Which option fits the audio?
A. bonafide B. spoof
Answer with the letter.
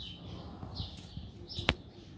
A